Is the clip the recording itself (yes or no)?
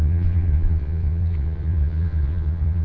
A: no